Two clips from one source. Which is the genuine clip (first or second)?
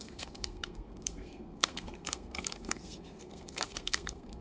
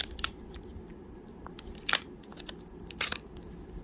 second